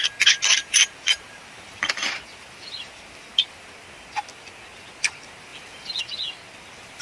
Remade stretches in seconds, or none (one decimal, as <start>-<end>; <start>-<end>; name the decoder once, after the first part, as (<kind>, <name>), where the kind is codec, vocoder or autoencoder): 0.6-1.9 (vocoder, BigVGAN v2); 5.5-6.0

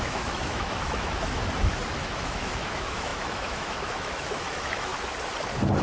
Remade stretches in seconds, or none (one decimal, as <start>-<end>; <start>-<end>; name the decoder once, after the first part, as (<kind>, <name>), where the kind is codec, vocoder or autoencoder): 0.0-1.4 (autoencoder, DAC-VAE); 2.0-4.9

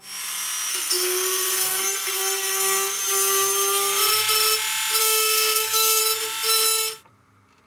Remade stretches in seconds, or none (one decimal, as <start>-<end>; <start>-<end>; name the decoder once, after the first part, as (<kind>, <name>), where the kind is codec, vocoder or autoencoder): 0.7-3.0 (codec, SNAC); 5.0-6.0

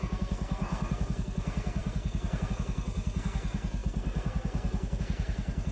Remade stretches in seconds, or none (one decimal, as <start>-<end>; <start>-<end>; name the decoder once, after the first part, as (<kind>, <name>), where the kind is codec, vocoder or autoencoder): 0.0-5.7 (codec, SNAC)

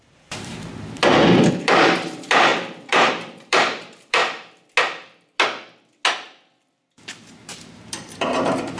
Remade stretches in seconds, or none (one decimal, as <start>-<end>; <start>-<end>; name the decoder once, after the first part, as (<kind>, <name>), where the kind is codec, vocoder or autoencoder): 0.0-4.2 (vocoder, BigVGAN v2); 7.5-8.8

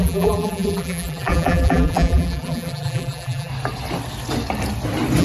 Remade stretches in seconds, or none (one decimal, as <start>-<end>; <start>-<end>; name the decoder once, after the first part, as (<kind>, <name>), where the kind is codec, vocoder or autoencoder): 0.0-3.5 (vocoder, BigVGAN v2)

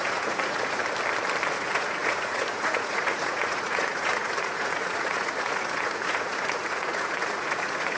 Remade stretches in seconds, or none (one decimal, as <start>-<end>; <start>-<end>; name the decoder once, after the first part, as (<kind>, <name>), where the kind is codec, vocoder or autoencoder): 0.0-0.8 (vocoder, Vocos); 1.5-8.0

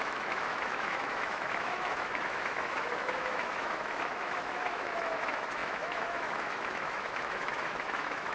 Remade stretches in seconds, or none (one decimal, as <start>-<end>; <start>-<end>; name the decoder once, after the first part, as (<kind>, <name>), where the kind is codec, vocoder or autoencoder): 0.0-8.3 (autoencoder, DAC-VAE)